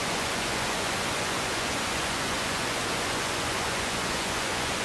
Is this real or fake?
fake